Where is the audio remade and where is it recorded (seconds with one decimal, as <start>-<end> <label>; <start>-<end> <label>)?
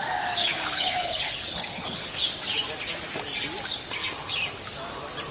0.0-0.4 recorded; 0.4-2.1 remade; 2.1-5.3 recorded